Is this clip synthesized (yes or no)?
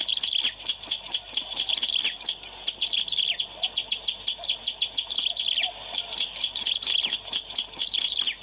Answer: no